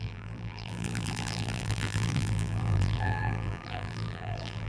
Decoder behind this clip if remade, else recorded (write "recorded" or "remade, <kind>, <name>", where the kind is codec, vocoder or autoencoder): remade, vocoder, BigVGAN v2